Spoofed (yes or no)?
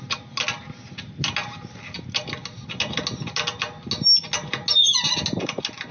no